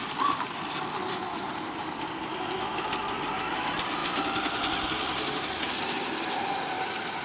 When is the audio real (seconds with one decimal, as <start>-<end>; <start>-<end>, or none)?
2.7-4.0; 5.8-7.2